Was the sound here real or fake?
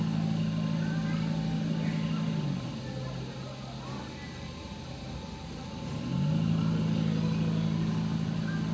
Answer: real